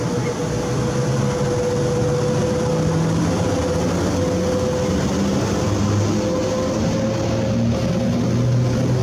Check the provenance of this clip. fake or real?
real